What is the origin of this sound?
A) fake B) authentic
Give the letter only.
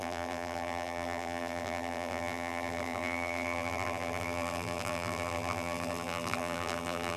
A